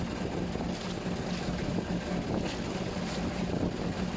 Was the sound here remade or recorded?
recorded